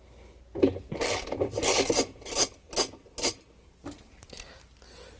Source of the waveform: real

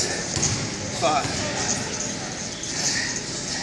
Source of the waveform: real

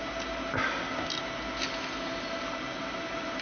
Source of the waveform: real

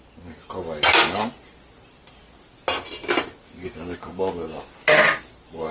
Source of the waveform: real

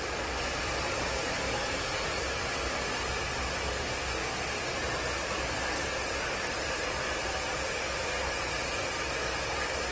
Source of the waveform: real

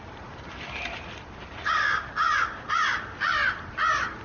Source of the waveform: real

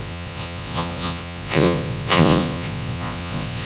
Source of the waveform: fake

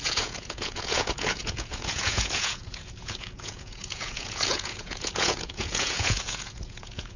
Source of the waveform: fake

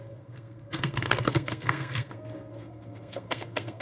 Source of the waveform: fake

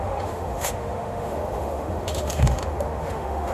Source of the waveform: fake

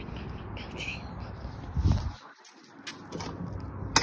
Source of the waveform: real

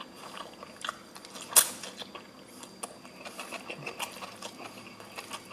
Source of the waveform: real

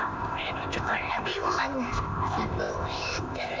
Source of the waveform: fake